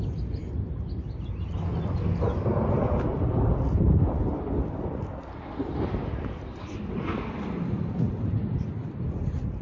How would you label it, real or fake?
real